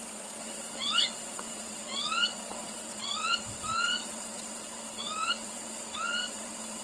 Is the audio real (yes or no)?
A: no